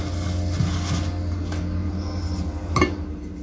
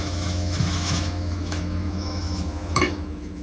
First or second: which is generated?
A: second